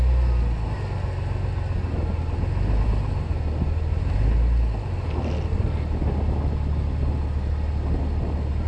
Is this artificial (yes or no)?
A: no